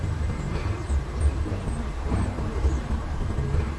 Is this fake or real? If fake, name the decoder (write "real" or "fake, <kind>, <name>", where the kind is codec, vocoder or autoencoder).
fake, vocoder, BigVGAN v2